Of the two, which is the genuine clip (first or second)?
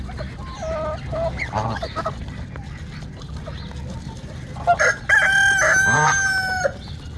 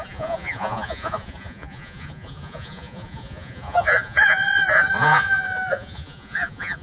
first